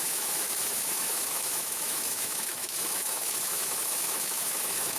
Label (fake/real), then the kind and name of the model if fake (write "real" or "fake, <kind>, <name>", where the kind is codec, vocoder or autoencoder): fake, autoencoder, DAC-VAE